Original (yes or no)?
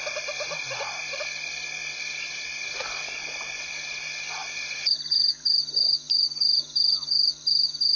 yes